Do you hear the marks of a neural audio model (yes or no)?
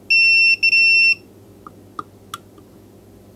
no